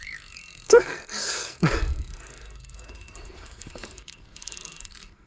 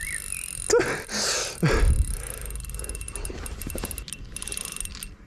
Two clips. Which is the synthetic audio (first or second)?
first